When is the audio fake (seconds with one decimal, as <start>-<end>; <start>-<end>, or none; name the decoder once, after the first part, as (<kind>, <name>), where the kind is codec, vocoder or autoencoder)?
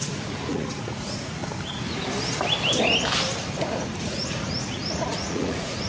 0.0-1.4 (vocoder, Vocos); 4.0-5.9